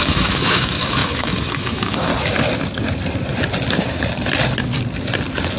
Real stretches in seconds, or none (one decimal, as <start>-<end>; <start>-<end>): 2.1-5.6